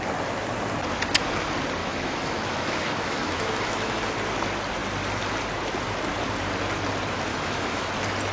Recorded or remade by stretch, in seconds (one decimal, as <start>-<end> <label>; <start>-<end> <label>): 0.0-1.8 recorded; 1.8-4.0 remade; 4.0-7.3 recorded; 7.3-7.9 remade; 7.9-8.3 recorded